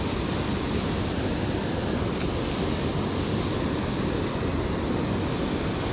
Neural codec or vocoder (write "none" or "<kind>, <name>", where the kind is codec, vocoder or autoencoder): none